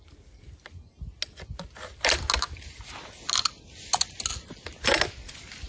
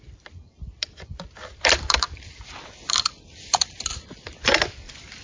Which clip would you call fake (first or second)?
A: second